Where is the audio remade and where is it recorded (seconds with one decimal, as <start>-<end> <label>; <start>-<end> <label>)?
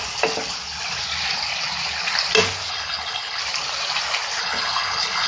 0.0-2.7 recorded; 2.7-3.4 remade; 3.4-4.4 recorded; 4.4-5.3 remade